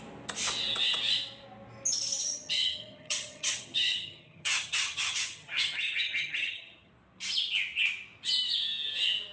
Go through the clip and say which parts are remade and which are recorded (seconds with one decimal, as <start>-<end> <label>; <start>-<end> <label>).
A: 0.0-2.2 recorded; 2.2-6.9 remade; 6.9-9.3 recorded

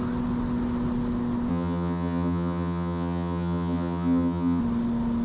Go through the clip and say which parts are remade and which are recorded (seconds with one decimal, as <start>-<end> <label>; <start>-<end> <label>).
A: 0.0-1.5 recorded; 1.5-4.6 remade; 4.6-5.2 recorded

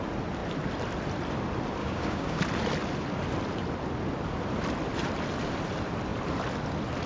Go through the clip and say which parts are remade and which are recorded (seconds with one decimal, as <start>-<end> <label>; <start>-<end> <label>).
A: 0.0-1.8 recorded; 1.8-2.4 remade; 2.4-7.1 recorded

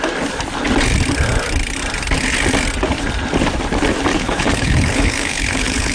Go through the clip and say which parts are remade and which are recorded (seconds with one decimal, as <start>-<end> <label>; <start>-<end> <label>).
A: 0.0-4.1 recorded; 4.1-5.9 remade